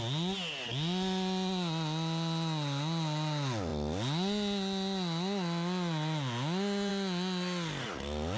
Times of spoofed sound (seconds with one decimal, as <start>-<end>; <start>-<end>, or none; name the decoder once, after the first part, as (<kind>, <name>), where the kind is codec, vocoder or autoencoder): none

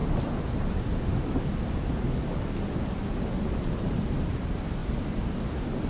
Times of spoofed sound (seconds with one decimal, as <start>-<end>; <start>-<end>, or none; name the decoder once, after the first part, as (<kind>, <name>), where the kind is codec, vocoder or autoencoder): 3.4-4.8 (vocoder, BigVGAN v2)

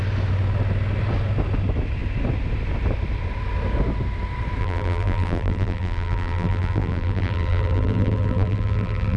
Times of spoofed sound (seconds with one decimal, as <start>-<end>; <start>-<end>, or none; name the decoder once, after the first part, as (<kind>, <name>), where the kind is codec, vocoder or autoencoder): 4.6-9.2 (vocoder, BigVGAN v2)

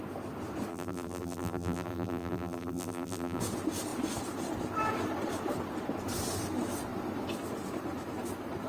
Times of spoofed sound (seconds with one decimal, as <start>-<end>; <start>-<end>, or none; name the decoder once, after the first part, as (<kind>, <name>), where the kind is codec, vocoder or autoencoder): 0.7-3.4 (vocoder, BigVGAN v2)

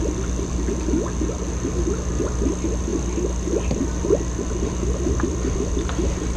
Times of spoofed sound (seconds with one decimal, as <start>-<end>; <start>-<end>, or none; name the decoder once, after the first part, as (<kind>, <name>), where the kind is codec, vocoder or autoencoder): none

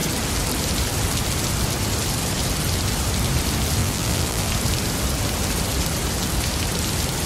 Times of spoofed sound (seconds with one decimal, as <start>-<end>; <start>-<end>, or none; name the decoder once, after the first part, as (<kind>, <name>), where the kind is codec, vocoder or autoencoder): 3.8-4.5 (vocoder, BigVGAN v2)

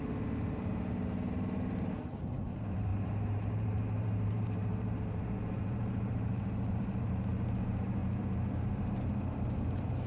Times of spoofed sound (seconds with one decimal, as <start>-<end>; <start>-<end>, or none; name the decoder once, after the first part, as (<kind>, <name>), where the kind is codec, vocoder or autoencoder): 2.9-7.1 (vocoder, BigVGAN v2); 8.0-9.1

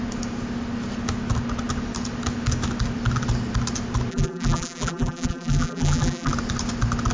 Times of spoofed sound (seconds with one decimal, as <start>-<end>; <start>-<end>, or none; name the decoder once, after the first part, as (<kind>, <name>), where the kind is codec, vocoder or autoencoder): 4.1-6.3 (vocoder, BigVGAN v2)